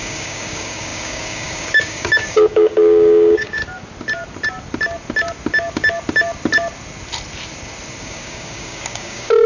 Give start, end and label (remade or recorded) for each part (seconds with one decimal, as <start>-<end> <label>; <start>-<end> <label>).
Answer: 0.0-3.6 remade; 3.6-8.0 recorded; 8.0-9.5 remade

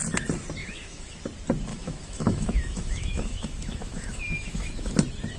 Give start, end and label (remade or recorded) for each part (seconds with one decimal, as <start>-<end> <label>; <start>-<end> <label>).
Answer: 0.0-0.6 recorded; 0.6-1.2 remade; 1.2-1.7 recorded; 1.7-4.9 remade; 4.9-5.4 recorded

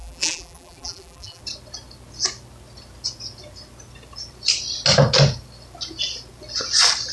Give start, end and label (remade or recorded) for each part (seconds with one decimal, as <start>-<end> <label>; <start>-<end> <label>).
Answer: 0.0-1.4 remade; 1.4-7.1 recorded

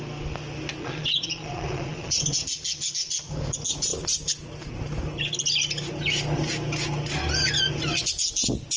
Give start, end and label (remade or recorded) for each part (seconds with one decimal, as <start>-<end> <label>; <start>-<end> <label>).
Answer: 0.0-0.8 recorded; 0.8-2.2 remade; 2.2-8.8 recorded